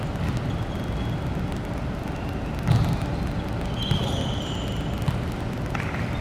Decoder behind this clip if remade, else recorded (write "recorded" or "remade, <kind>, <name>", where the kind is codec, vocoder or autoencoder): recorded